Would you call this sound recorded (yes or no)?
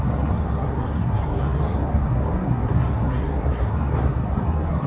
no